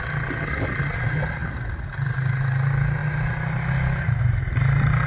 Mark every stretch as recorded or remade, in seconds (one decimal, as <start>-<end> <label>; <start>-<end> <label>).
0.0-5.1 recorded